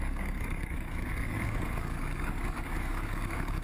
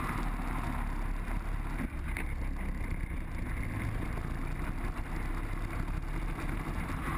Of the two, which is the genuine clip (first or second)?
second